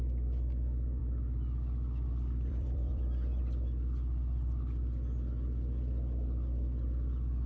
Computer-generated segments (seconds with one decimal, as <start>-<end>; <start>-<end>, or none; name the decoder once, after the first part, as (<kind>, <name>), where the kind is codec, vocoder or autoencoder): 1.0-3.4 (vocoder, BigVGAN v2)